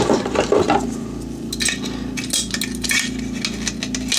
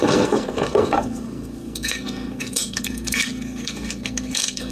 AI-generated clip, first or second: second